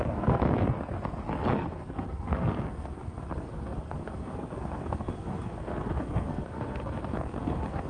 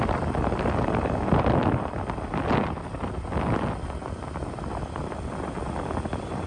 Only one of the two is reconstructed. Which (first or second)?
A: first